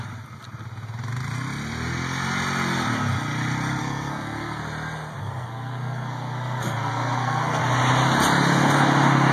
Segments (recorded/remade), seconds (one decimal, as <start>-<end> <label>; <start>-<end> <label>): 0.0-3.8 recorded; 3.8-4.6 remade; 4.6-5.2 recorded; 5.2-7.6 remade; 7.6-9.3 recorded